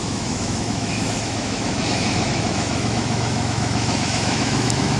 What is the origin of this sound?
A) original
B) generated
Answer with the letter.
B